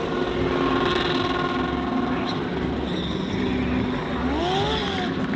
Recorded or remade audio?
recorded